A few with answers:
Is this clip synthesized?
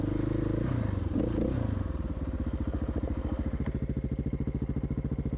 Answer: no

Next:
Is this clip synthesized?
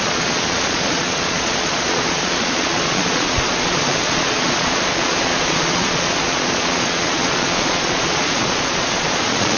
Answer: yes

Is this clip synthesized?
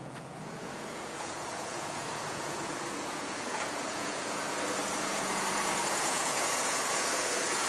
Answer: yes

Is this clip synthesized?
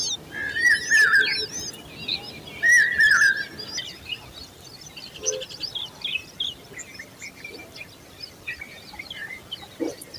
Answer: no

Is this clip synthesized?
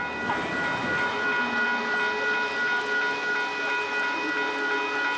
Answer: no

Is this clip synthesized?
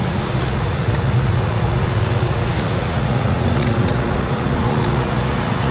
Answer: yes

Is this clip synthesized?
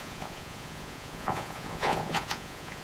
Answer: yes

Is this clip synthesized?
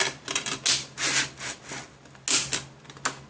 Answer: no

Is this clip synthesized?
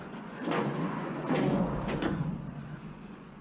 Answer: yes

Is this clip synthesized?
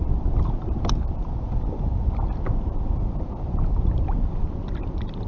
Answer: no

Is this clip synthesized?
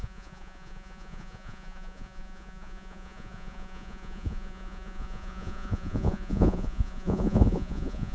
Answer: yes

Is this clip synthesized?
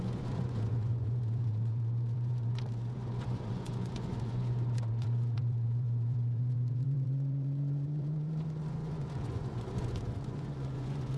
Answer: yes